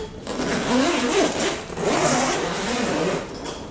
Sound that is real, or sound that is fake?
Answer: real